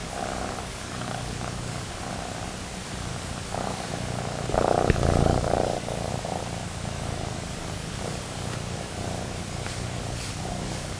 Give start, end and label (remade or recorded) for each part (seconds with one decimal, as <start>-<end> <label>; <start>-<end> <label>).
0.0-1.9 remade; 1.9-3.1 recorded; 3.1-6.1 remade; 6.1-6.6 recorded; 6.6-11.0 remade